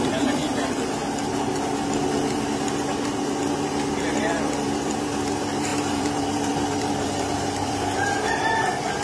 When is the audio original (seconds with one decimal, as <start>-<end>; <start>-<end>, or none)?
1.0-4.2